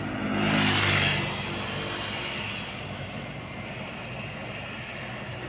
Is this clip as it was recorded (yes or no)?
yes